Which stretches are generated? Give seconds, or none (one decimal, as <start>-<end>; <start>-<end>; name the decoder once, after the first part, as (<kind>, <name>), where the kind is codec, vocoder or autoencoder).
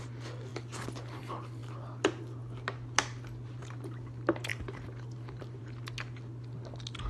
4.5-5.6 (vocoder, BigVGAN v2)